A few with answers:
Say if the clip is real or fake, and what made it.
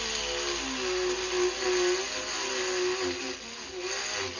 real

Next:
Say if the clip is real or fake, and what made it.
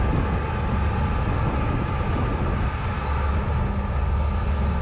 real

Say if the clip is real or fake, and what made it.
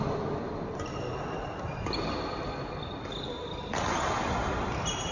real